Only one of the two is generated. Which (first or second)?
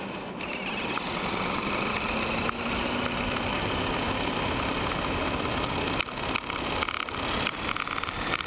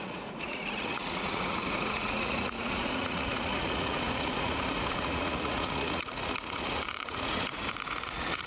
second